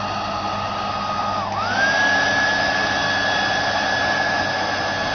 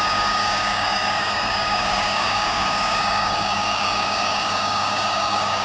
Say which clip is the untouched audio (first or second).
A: first